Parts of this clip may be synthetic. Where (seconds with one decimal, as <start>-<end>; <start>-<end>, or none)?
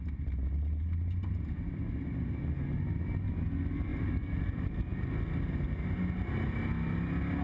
3.9-4.8